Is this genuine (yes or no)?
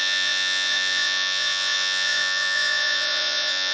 no